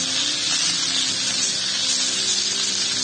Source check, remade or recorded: recorded